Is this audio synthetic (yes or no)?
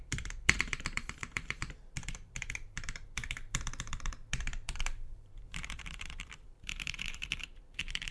yes